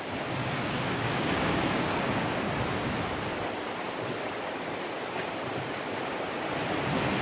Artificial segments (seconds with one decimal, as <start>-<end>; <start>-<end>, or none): 0.4-2.3